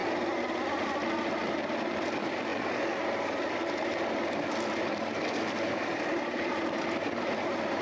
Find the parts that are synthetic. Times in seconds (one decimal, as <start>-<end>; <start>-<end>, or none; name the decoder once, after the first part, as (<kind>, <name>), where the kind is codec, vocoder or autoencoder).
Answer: 0.8-7.8 (vocoder, BigVGAN v2)